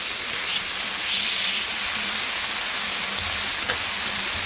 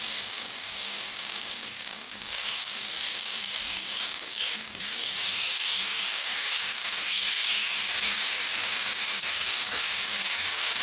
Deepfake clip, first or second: second